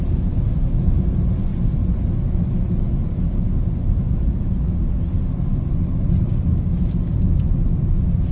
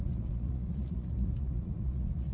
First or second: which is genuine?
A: first